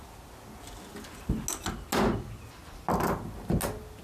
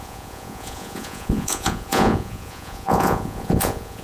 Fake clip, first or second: second